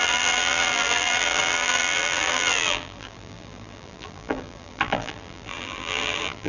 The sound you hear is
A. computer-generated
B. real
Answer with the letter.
A